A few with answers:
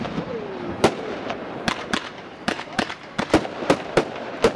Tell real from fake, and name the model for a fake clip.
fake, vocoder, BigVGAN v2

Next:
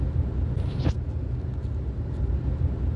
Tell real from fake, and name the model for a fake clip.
real